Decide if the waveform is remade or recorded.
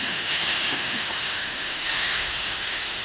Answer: remade